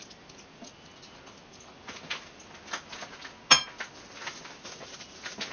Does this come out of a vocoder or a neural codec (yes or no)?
no